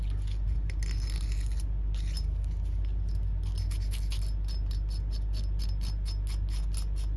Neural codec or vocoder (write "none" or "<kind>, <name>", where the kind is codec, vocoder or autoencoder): none